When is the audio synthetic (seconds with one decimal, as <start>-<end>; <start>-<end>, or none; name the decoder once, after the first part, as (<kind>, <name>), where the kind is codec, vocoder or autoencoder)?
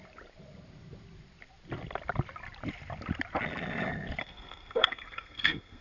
4.2-5.8 (codec, SNAC)